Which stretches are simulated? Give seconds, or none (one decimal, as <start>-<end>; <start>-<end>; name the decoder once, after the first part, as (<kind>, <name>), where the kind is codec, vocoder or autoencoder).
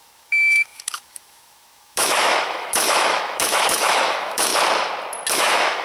0.0-4.5 (autoencoder, DAC-VAE); 5.3-5.8